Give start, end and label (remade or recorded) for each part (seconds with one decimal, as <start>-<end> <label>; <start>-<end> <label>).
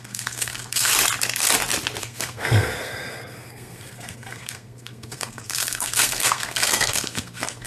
0.0-0.9 remade; 0.9-2.0 recorded; 2.0-7.7 remade